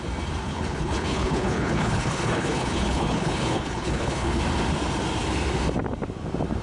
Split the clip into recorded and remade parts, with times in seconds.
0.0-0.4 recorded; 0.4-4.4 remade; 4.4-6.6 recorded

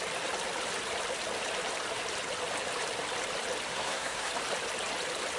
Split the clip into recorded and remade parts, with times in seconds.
0.0-3.7 recorded; 3.7-4.3 remade; 4.3-5.4 recorded

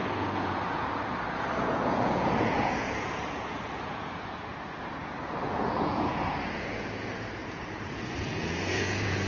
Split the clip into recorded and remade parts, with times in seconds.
0.0-9.3 remade